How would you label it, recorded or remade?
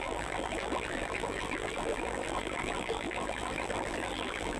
remade